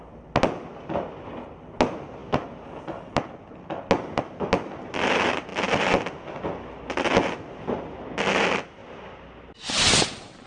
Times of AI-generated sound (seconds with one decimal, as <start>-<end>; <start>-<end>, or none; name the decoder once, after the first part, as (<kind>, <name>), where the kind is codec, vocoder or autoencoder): none